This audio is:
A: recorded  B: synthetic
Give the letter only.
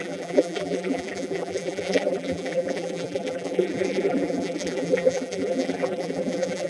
B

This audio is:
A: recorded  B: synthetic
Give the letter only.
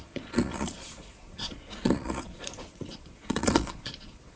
B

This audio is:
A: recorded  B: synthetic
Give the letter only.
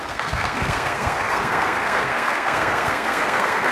B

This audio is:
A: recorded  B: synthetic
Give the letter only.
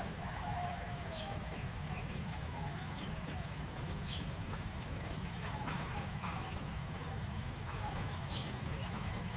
B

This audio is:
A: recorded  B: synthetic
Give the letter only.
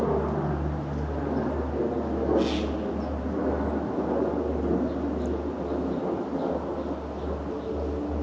A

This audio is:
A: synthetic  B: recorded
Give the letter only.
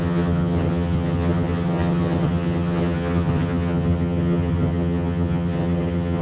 A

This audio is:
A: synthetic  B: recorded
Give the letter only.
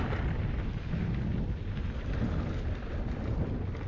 B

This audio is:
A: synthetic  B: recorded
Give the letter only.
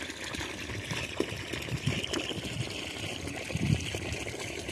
B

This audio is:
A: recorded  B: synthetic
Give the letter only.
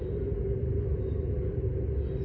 A